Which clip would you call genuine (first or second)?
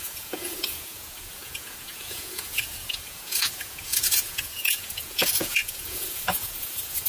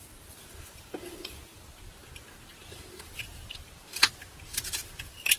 second